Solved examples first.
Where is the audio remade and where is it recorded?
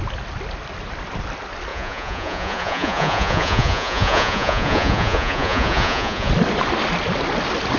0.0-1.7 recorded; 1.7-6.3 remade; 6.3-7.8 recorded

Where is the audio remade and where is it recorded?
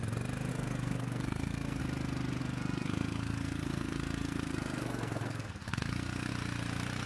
0.0-0.5 recorded; 0.5-1.8 remade; 1.8-2.4 recorded; 2.4-6.3 remade; 6.3-7.1 recorded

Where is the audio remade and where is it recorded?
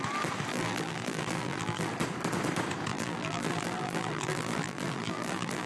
0.0-0.5 recorded; 0.5-1.9 remade; 1.9-2.9 recorded; 2.9-5.7 remade